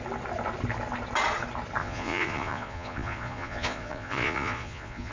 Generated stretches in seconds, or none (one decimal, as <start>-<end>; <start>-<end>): 1.8-5.1